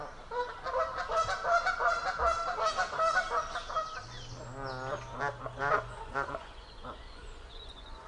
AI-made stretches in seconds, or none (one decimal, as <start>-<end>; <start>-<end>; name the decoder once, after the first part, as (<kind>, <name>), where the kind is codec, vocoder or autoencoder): 5.6-8.1 (vocoder, Vocos)